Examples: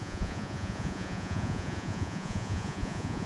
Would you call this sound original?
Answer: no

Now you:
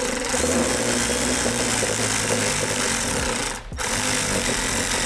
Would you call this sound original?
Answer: yes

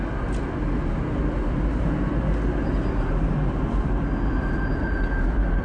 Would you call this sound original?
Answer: yes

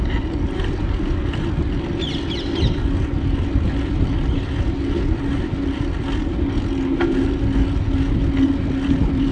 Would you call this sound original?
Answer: yes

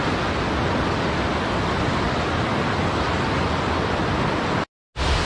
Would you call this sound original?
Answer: yes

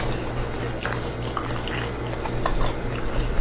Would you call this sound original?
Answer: yes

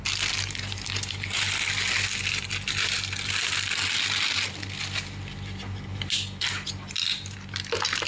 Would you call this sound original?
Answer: yes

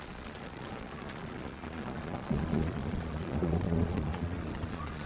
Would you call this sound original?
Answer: no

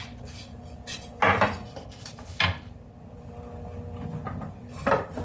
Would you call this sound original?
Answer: yes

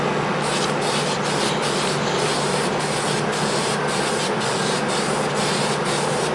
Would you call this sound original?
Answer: yes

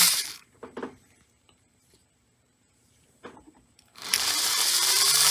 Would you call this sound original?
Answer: no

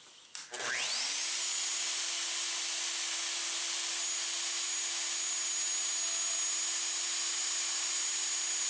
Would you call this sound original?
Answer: yes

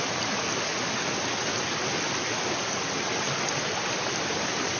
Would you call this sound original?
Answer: yes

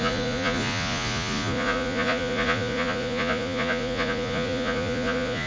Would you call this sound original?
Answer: no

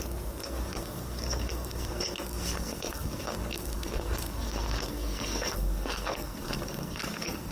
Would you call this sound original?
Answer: no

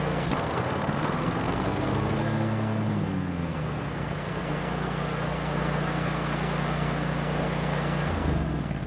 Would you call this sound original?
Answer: no